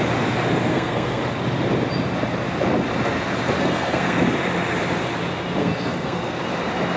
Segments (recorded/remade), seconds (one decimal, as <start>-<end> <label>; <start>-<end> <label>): 0.0-0.7 recorded; 0.7-1.2 remade; 1.2-3.6 recorded; 3.6-4.2 remade; 4.2-5.6 recorded; 5.6-6.4 remade; 6.4-7.0 recorded